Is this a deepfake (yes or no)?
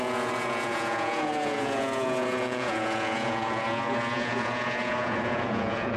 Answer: yes